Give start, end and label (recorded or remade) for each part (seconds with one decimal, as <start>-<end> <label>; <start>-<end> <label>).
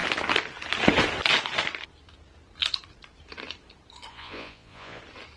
0.0-4.1 recorded; 4.1-5.0 remade; 5.0-5.4 recorded